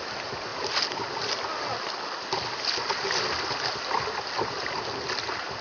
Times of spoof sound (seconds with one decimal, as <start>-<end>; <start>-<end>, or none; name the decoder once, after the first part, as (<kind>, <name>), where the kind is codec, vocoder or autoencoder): none